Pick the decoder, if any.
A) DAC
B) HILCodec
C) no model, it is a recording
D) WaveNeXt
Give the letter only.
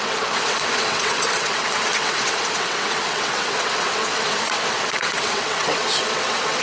D